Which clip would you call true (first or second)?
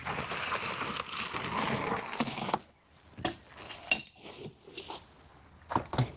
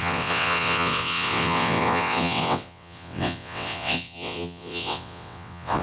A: first